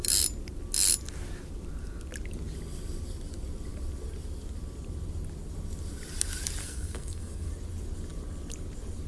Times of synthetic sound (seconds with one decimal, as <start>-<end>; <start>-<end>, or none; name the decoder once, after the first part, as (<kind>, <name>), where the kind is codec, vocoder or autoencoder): 6.6-7.5 (codec, SNAC)